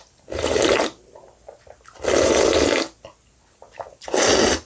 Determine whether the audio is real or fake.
real